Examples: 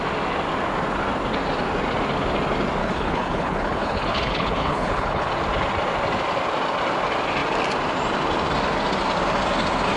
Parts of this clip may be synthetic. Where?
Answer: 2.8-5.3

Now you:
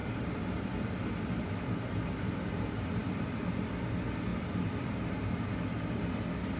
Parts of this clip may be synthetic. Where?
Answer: 0.0-2.6; 3.0-3.8; 4.3-6.0

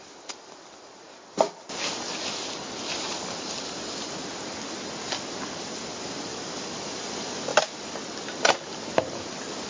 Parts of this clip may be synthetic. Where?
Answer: none

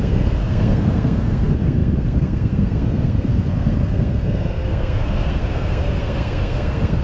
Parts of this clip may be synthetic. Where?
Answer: 0.0-7.0

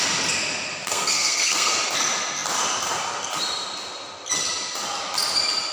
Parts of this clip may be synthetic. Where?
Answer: 0.9-1.7

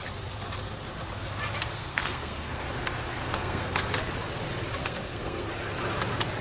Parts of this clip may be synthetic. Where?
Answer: 1.7-2.6; 3.2-4.1; 4.8-5.5